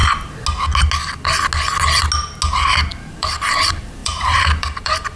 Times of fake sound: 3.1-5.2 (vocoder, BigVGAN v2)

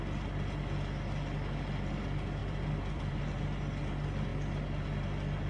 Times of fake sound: 2.4-3.2 (vocoder, BigVGAN v2)

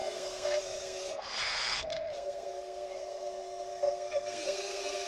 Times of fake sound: 0.0-5.1 (codec, SNAC)

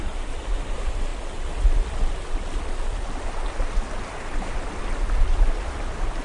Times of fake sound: none

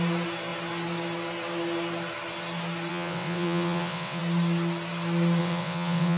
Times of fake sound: 2.9-4.2 (vocoder, WaveNeXt); 5.4-6.2

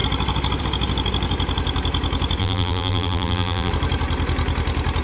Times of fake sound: 2.4-3.7 (vocoder, BigVGAN v2)

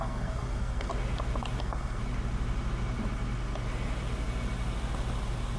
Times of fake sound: 0.0-0.9 (codec, SNAC); 1.6-2.0